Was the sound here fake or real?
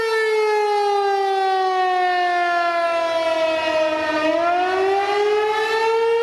real